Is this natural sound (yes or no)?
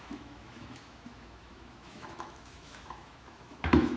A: no